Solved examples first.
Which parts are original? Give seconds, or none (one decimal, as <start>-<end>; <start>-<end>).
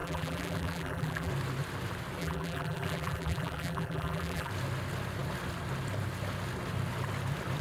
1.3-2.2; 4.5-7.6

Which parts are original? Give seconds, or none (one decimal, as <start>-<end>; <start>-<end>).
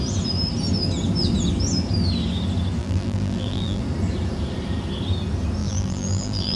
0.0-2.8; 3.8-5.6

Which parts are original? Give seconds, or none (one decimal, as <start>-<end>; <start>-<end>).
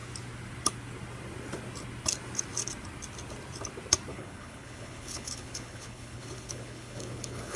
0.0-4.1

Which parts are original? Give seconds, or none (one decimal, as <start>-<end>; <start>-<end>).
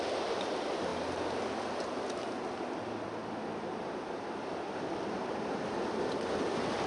0.0-6.9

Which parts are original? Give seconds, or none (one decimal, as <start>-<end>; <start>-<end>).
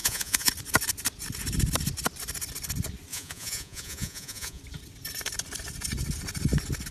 0.5-3.1; 4.6-6.9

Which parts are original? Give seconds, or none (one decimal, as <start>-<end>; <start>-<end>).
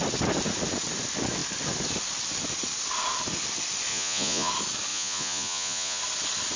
0.0-3.9; 4.5-4.9; 6.0-6.6